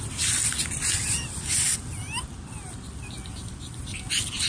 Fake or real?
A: real